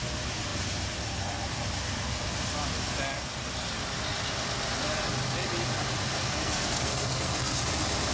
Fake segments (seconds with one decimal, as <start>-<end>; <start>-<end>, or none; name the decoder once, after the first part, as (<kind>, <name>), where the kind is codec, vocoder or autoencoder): 6.2-7.6 (codec, SNAC)